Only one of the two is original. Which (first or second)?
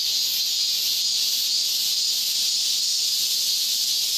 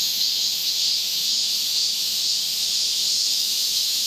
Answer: first